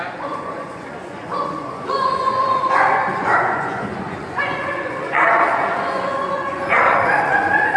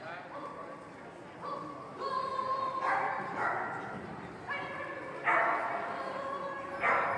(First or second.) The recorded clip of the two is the second